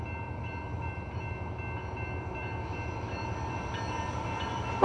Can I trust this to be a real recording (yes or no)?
yes